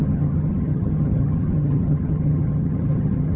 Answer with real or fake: fake